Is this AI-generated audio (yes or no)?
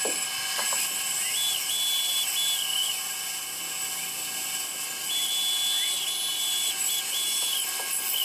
no